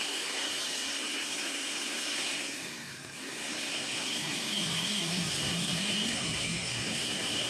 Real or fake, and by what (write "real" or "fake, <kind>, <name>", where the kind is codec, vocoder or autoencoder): fake, codec, SNAC